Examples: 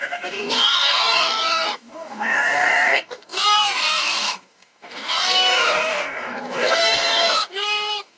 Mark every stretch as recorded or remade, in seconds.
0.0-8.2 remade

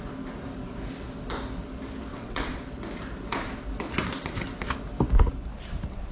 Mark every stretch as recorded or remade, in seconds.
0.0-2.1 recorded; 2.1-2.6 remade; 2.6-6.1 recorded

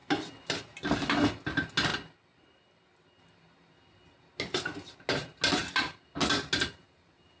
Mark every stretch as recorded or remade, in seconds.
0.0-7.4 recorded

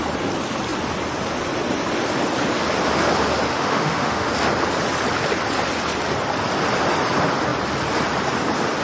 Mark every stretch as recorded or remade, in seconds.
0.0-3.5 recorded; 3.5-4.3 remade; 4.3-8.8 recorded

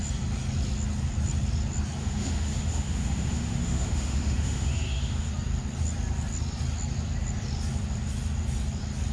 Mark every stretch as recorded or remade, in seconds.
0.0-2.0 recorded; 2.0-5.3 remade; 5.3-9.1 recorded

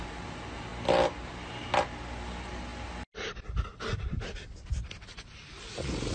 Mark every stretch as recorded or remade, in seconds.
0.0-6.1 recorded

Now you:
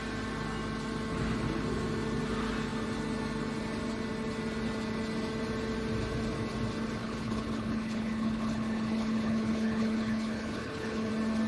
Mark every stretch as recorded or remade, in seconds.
0.0-7.0 recorded; 7.0-11.1 remade; 11.1-11.5 recorded

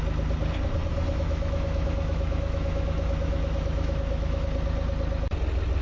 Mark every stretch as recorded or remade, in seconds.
0.0-0.9 recorded; 0.9-4.4 remade; 4.4-5.8 recorded